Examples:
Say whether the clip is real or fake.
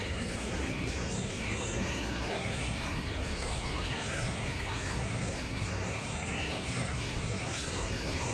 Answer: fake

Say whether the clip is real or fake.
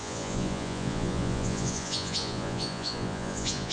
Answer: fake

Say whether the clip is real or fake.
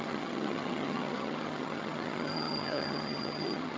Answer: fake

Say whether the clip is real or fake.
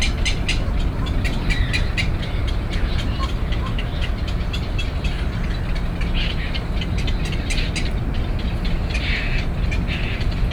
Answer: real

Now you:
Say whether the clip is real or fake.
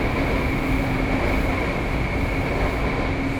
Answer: real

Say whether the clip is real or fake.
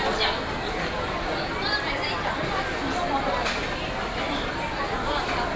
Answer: real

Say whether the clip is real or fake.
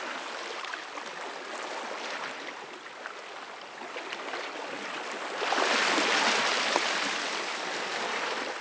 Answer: real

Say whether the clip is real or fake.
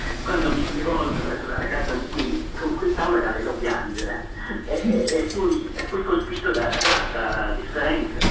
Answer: fake